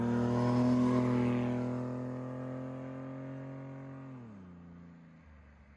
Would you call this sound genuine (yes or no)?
yes